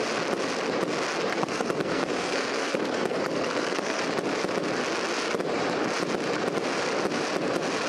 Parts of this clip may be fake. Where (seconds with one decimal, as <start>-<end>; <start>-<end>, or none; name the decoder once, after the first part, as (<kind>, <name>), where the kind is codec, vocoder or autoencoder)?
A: 1.3-4.0 (codec, SNAC)